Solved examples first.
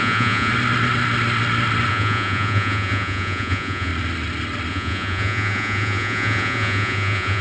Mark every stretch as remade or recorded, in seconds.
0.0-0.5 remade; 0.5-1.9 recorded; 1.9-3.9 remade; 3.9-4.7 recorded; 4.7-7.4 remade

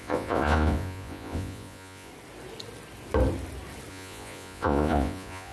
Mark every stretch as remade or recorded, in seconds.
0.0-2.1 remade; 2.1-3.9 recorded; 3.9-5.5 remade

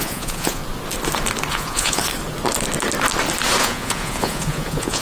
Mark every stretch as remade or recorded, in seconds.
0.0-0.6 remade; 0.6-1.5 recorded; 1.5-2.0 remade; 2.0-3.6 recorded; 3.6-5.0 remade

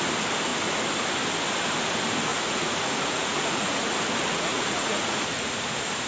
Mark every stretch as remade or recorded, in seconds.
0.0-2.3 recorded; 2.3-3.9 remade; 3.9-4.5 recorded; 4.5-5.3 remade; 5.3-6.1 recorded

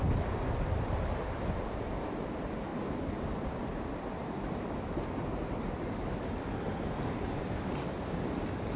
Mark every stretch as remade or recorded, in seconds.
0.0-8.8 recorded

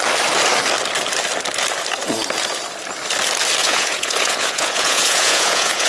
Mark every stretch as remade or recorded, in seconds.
0.0-3.6 recorded; 3.6-5.9 remade

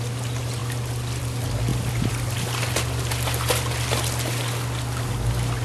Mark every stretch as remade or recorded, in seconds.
0.0-5.6 recorded